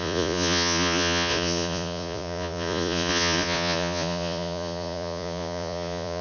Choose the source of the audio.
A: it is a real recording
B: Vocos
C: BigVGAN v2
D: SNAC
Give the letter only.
B